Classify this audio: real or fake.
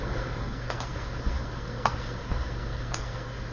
fake